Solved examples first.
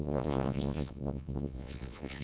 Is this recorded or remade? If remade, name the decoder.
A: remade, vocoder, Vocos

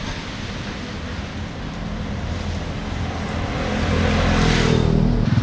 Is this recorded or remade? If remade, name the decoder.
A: recorded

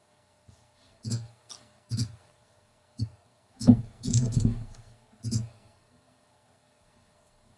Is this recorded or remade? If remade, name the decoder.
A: remade, codec, SNAC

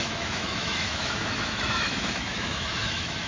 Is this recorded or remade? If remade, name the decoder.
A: remade, autoencoder, DAC-VAE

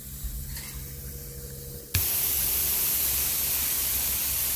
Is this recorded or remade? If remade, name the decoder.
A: recorded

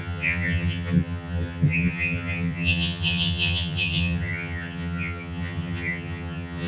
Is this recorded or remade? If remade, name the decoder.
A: remade, vocoder, HiFi-GAN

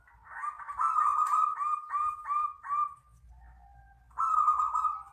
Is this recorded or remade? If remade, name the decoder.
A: recorded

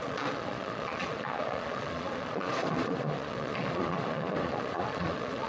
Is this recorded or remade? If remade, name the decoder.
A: remade, vocoder, Vocos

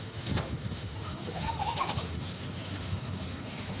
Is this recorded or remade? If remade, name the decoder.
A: remade, autoencoder, DAC-VAE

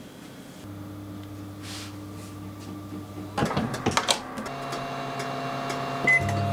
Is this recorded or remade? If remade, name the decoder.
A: recorded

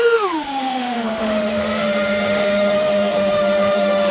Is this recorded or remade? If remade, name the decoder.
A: remade, autoencoder, DAC-VAE